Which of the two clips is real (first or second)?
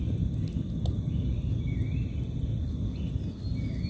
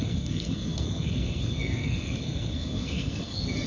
first